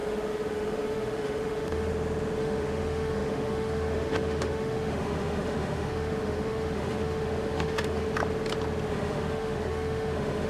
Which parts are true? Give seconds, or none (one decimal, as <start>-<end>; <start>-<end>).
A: 1.9-2.4; 8.1-8.9